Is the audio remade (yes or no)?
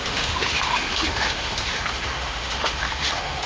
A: yes